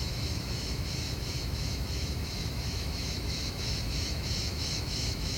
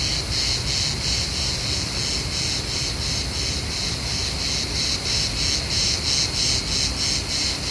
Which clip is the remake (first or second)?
first